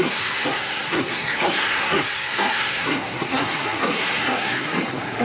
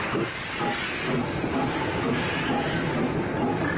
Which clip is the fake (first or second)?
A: first